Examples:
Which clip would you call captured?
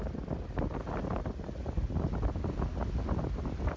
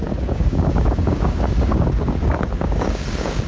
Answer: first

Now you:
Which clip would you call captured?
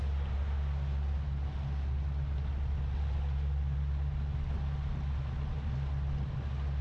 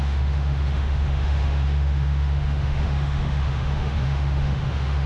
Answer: first